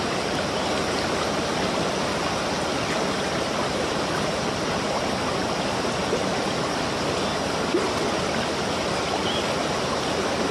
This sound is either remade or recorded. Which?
recorded